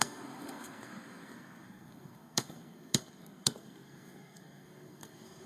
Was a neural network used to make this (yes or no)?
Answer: yes